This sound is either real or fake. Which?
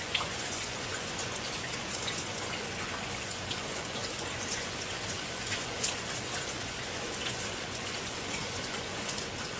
fake